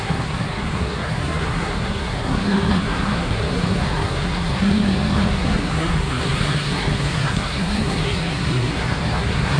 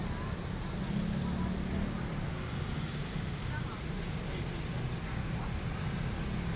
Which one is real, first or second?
second